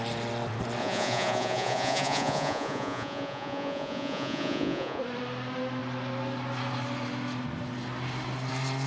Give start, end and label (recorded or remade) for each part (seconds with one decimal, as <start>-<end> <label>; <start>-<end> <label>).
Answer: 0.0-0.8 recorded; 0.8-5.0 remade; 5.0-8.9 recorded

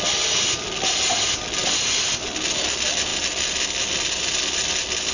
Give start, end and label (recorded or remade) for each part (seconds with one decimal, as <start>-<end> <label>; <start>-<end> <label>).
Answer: 0.0-5.1 recorded

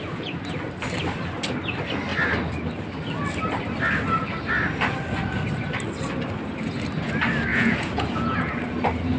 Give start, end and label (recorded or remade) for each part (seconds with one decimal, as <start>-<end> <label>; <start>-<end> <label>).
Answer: 0.0-7.5 recorded; 7.5-8.5 remade; 8.5-9.2 recorded

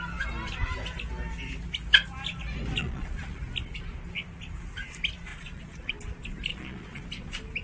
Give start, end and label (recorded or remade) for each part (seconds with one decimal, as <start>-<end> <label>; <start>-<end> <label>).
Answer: 0.0-2.8 recorded; 2.8-3.4 remade; 3.4-5.3 recorded; 5.3-5.9 remade; 5.9-6.5 recorded; 6.5-7.0 remade; 7.0-7.6 recorded